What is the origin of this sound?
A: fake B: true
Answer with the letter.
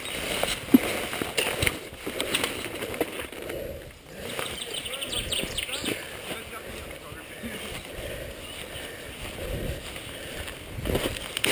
B